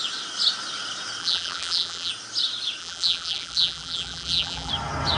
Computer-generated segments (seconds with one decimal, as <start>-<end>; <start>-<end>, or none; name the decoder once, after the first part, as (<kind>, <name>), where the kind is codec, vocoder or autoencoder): 1.2-2.1 (vocoder, BigVGAN v2); 2.8-4.7